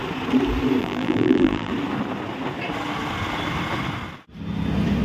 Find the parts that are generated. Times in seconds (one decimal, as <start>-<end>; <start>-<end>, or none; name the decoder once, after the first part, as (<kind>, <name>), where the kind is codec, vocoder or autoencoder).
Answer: 0.8-1.7 (vocoder, BigVGAN v2)